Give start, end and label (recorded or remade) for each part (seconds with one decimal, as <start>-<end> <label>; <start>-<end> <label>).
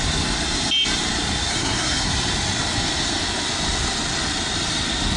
0.0-1.5 recorded; 1.5-2.1 remade; 2.1-5.2 recorded